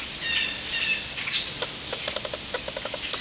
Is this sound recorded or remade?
recorded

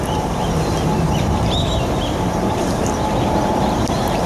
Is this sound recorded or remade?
remade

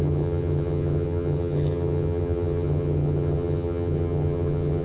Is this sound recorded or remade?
remade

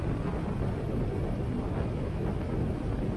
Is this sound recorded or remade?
recorded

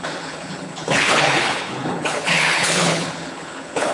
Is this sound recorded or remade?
remade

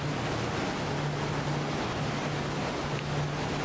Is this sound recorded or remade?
recorded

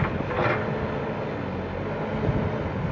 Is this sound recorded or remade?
recorded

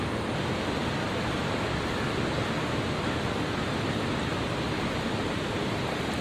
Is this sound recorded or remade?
recorded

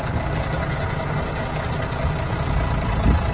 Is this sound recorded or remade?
recorded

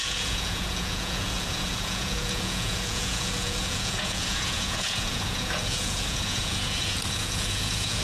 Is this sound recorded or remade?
remade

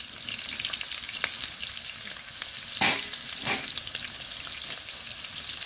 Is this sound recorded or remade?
recorded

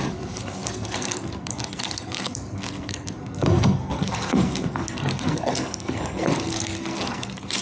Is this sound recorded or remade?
remade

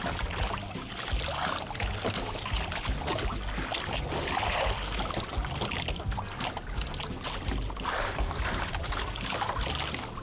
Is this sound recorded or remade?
recorded